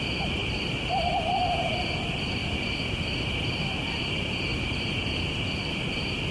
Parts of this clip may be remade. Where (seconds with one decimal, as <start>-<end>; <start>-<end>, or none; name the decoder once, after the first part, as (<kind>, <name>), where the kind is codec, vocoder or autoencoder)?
0.4-1.3 (vocoder, BigVGAN v2); 4.5-5.3